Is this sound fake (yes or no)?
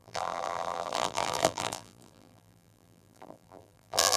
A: yes